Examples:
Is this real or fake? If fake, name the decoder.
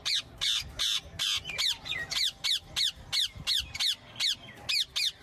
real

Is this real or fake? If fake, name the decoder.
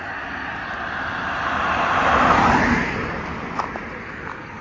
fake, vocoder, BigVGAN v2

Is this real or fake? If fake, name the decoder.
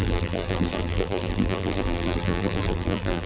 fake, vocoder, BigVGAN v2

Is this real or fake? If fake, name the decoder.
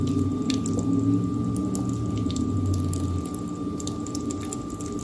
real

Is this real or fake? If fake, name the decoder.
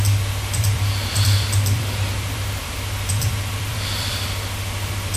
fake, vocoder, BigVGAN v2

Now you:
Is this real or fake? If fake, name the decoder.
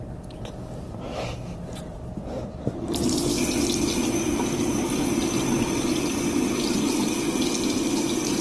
fake, vocoder, BigVGAN v2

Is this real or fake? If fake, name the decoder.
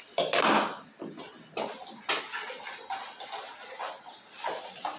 real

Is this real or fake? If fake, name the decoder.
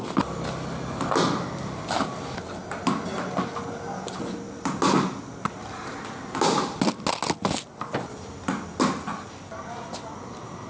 real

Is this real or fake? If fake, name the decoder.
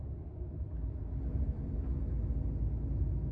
real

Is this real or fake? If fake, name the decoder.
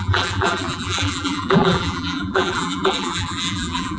fake, vocoder, BigVGAN v2